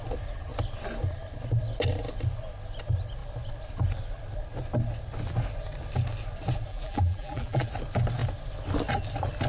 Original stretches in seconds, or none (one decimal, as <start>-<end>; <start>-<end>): 0.0-6.7; 7.7-9.5